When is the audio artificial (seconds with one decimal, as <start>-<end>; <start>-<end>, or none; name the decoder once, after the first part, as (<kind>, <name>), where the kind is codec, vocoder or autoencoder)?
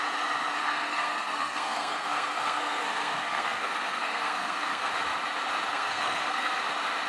0.6-4.9 (codec, SNAC); 5.7-6.6